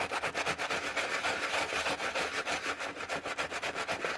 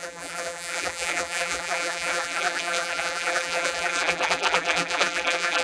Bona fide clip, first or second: first